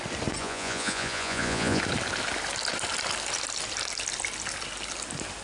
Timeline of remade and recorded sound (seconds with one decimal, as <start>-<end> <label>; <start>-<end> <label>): 0.0-0.4 recorded; 0.4-1.8 remade; 1.8-5.4 recorded